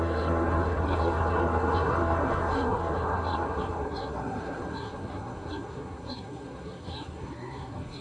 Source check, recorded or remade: remade